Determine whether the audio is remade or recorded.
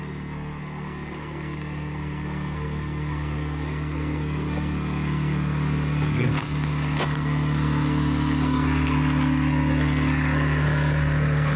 remade